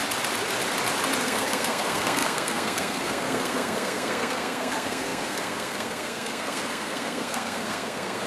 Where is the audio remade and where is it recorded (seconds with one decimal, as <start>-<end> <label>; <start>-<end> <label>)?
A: 0.0-1.2 recorded; 1.2-8.3 remade